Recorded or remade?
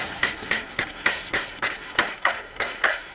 remade